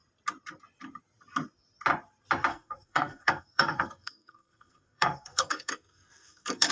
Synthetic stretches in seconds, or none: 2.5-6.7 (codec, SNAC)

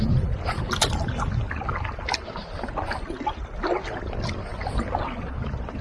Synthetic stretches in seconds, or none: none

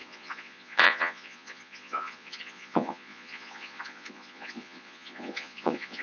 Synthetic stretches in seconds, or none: 0.0-6.0 (vocoder, Vocos)

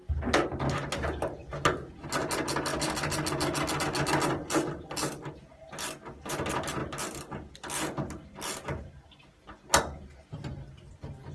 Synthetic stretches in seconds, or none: none

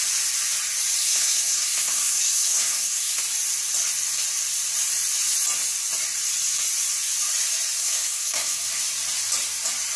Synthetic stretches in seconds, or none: 1.0-3.2 (codec, SNAC); 7.8-8.8

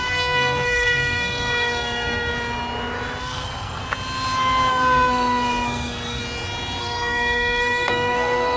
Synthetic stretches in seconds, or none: 0.0-2.3 (codec, SNAC); 3.2-3.8; 4.7-6.2; 6.8-8.6

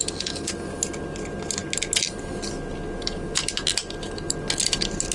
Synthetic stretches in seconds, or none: none

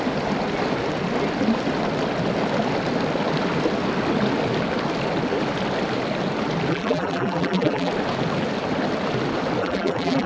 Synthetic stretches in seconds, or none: 6.7-7.9 (vocoder, BigVGAN v2); 9.6-10.3